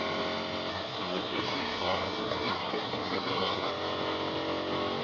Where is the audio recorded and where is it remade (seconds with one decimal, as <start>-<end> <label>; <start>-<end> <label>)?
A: 0.0-0.7 recorded; 0.7-3.7 remade; 3.7-5.0 recorded

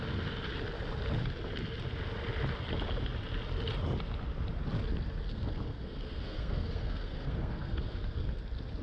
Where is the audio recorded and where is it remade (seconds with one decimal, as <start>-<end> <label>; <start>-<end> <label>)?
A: 0.0-5.3 recorded; 5.3-8.4 remade; 8.4-8.8 recorded

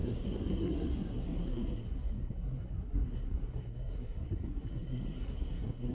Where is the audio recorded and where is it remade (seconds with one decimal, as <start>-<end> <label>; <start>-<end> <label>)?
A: 0.0-5.9 remade

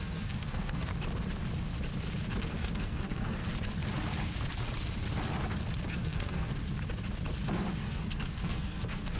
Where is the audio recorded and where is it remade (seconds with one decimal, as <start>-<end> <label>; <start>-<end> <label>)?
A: 0.0-0.9 remade; 0.9-2.4 recorded; 2.4-3.5 remade; 3.5-5.9 recorded; 5.9-6.5 remade; 6.5-7.7 recorded; 7.7-9.2 remade

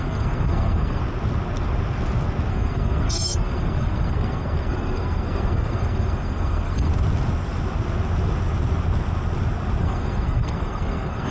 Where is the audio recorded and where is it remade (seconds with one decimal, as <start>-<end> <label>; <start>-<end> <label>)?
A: 0.0-1.0 remade; 1.0-2.5 recorded; 2.5-6.9 remade; 6.9-9.8 recorded; 9.8-11.3 remade